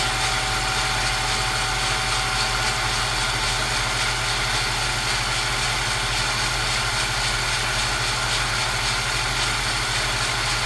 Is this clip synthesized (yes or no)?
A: no